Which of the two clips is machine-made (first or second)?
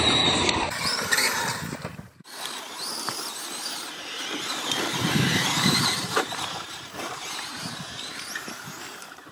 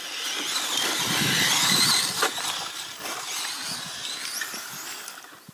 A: first